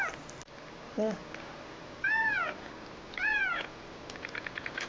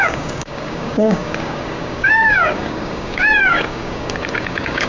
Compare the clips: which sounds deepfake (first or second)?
second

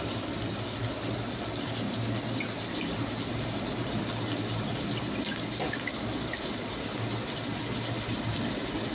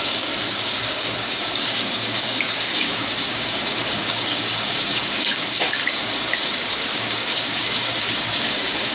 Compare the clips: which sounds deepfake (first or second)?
second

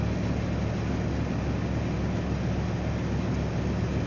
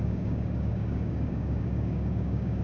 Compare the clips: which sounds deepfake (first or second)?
second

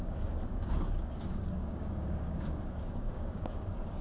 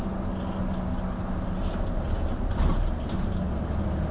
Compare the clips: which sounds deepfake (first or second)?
first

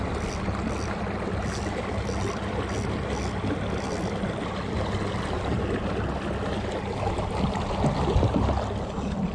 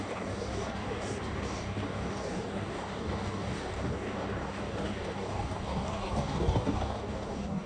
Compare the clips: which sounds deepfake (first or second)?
second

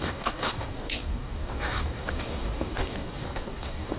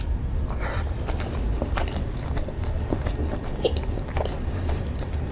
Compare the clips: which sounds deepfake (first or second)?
first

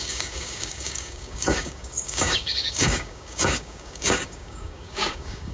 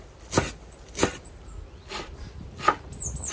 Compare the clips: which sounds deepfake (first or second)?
first